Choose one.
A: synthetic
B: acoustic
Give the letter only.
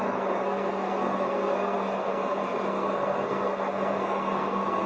A